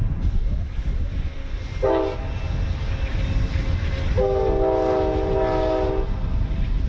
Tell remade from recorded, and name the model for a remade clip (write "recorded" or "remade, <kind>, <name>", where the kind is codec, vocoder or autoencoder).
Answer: recorded